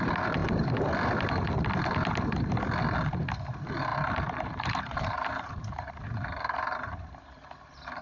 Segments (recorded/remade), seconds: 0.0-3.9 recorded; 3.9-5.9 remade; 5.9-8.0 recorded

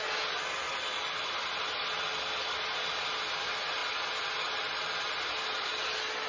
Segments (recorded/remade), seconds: 0.0-6.3 recorded

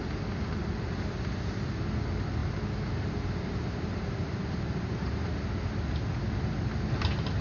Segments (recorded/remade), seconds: 0.0-2.4 recorded; 2.4-5.5 remade; 5.5-7.4 recorded